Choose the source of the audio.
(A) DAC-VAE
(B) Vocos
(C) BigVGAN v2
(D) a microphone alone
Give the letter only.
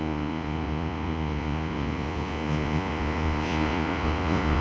B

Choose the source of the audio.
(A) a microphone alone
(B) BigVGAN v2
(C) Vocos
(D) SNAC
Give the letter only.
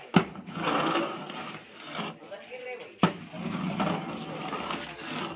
A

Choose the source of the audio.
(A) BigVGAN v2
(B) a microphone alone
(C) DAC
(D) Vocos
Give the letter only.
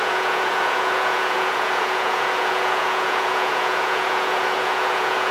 D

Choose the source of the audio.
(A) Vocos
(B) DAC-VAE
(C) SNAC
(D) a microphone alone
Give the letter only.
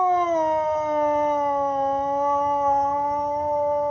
D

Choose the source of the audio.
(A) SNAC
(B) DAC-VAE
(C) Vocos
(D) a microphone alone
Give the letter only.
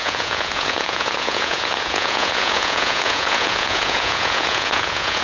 C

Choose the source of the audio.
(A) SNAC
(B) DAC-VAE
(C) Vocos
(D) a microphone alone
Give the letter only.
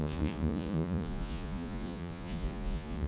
C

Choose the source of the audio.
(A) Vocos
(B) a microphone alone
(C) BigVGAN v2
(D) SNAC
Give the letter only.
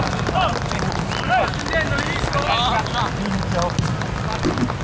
B